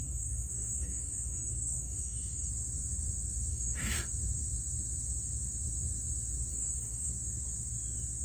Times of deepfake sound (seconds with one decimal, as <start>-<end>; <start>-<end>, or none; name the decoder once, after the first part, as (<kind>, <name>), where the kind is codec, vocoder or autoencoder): 0.0-2.5 (codec, DAC); 3.5-4.1; 6.5-7.1

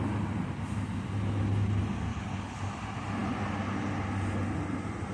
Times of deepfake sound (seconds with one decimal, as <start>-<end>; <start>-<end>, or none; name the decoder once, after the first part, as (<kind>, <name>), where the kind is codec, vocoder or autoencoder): 2.1-2.6 (codec, HILCodec)

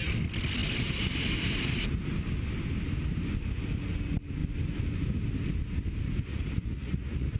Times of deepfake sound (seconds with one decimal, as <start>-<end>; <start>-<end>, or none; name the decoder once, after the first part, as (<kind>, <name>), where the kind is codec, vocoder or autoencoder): 6.3-7.4 (vocoder, Vocos)

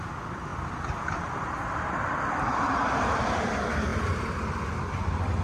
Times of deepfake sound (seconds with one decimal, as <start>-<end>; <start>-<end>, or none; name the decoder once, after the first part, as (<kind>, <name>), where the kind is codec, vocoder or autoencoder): 0.0-3.9 (vocoder, BigVGAN v2); 4.9-5.4

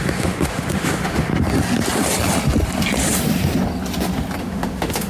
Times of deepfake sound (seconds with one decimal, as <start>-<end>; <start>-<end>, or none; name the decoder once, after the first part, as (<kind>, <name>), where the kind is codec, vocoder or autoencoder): 0.0-1.3 (autoencoder, DAC-VAE); 4.4-5.1

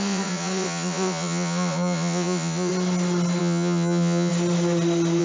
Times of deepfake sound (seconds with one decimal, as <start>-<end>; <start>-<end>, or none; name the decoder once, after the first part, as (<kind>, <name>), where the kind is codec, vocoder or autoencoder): 0.0-2.7 (vocoder, Vocos); 3.4-4.3